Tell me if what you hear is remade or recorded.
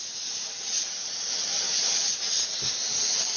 recorded